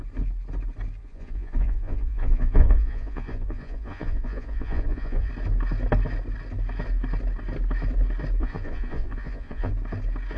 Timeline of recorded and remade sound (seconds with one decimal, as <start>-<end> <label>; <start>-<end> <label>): 0.0-1.0 recorded; 1.0-5.3 remade; 5.3-8.4 recorded; 8.4-9.7 remade; 9.7-10.4 recorded